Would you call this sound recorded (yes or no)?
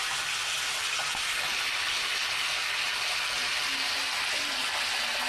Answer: yes